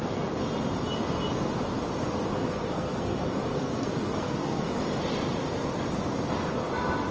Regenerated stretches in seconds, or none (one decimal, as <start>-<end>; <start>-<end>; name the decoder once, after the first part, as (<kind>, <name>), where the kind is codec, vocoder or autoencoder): 2.4-4.7 (codec, SNAC)

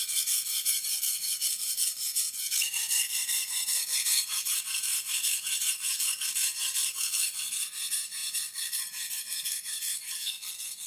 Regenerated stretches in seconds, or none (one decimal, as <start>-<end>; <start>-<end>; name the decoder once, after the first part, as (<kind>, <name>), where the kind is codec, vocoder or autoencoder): 0.0-10.9 (codec, SNAC)

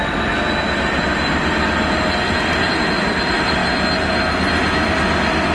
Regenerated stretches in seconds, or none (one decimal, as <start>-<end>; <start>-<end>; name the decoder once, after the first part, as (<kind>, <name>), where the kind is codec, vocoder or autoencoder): none